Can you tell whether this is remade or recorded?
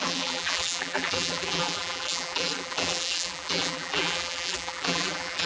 remade